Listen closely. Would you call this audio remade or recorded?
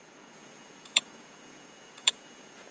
remade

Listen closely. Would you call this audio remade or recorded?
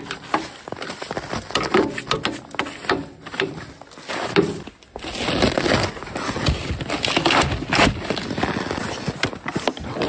recorded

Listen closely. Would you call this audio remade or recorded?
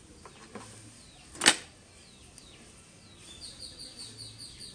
recorded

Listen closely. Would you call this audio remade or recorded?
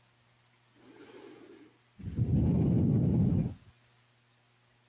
recorded